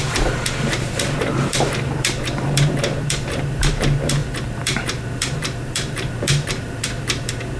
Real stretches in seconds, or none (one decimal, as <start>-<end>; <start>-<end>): none